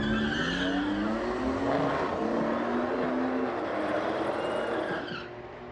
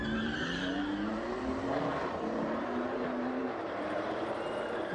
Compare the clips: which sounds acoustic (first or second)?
first